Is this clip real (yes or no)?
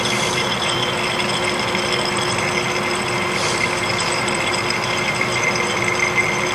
no